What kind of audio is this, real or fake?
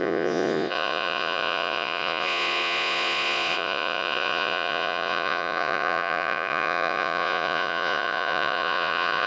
fake